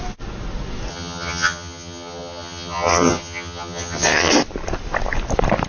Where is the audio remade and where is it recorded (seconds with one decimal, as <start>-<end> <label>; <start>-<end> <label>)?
0.0-0.9 recorded; 0.9-4.3 remade; 4.3-5.7 recorded